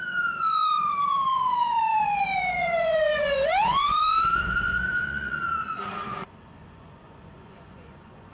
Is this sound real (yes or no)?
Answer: no